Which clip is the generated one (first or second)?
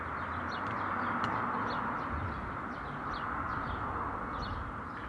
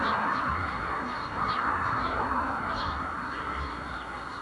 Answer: second